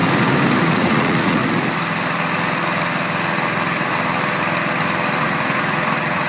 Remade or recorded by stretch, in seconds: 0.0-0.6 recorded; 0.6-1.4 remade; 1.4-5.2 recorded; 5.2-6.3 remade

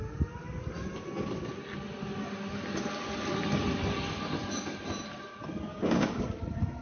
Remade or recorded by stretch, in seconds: 0.0-5.7 recorded; 5.7-6.2 remade; 6.2-6.8 recorded

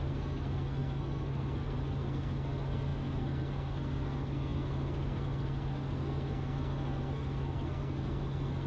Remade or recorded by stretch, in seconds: 0.0-8.7 remade

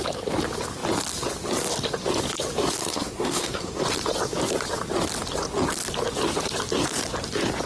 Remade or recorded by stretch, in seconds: 0.0-2.8 recorded; 2.8-3.8 remade; 3.8-7.7 recorded

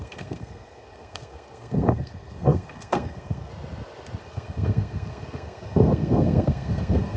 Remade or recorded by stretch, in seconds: 0.0-3.5 remade; 3.5-4.2 recorded; 4.2-7.2 remade

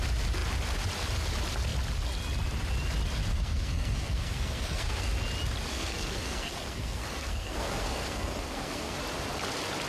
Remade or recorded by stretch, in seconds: 0.0-3.3 recorded; 3.3-5.1 remade; 5.1-5.7 recorded; 5.7-9.0 remade; 9.0-9.9 recorded

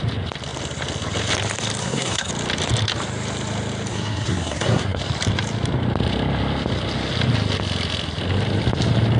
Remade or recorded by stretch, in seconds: 0.0-1.8 recorded; 1.8-2.3 remade; 2.3-3.9 recorded; 3.9-5.0 remade; 5.0-9.2 recorded